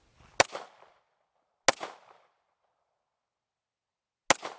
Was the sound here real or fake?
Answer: real